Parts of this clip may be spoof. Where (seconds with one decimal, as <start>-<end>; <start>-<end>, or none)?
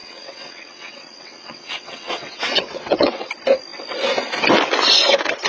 0.0-3.3